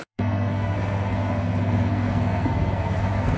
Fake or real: fake